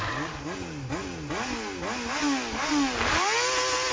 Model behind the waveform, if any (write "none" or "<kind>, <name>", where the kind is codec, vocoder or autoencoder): none